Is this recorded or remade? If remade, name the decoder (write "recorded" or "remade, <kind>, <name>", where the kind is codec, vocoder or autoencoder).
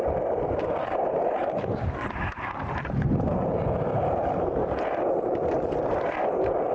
remade, vocoder, BigVGAN v2